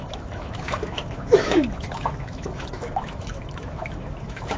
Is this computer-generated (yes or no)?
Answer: yes